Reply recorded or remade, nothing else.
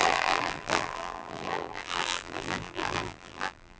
remade